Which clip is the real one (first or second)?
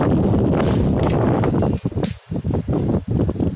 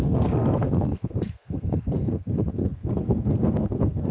first